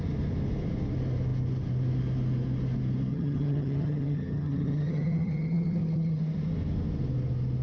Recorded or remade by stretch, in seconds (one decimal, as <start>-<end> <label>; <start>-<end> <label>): 0.0-3.1 recorded; 3.1-6.2 remade; 6.2-7.6 recorded